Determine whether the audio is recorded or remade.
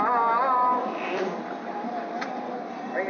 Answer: recorded